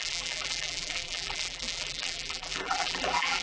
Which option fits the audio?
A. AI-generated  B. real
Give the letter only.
A